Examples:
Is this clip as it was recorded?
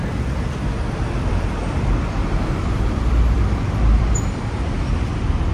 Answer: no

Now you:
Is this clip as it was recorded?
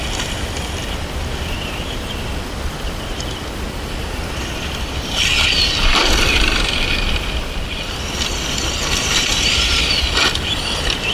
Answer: no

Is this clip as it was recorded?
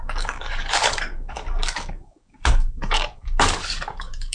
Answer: no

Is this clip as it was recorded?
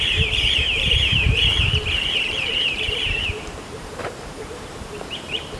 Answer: no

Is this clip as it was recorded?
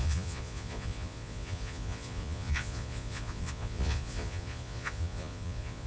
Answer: no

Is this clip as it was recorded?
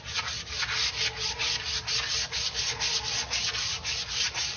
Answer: yes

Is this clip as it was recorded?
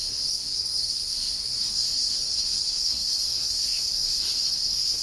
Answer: no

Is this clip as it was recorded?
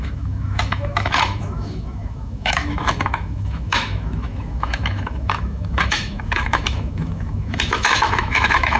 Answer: no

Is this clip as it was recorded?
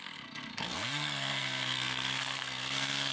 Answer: no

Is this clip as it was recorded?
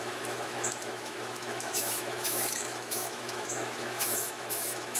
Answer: no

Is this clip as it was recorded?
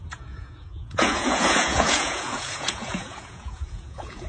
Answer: no